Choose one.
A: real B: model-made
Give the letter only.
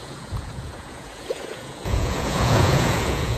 B